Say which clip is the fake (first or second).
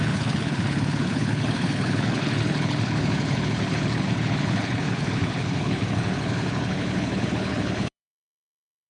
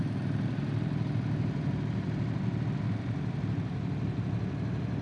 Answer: first